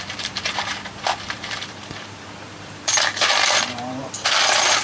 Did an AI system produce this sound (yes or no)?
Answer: yes